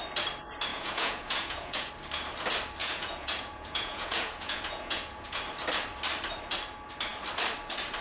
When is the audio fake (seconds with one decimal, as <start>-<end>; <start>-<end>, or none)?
0.7-1.9; 2.8-5.4